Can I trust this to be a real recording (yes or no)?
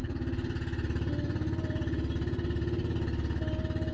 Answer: yes